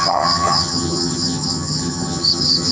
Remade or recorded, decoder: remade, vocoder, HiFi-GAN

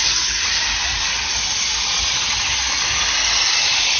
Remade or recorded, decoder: recorded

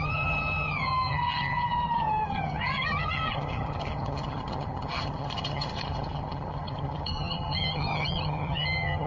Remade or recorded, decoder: remade, vocoder, HiFi-GAN